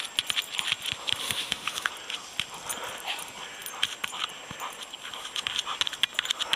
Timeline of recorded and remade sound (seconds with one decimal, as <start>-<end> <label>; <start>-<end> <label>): 0.0-1.2 recorded; 1.2-1.9 remade; 1.9-6.6 recorded